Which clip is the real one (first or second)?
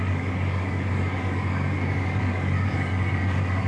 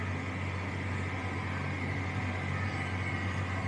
second